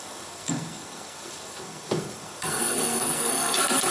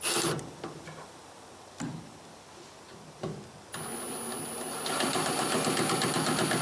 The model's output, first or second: first